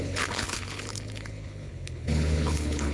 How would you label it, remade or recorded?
remade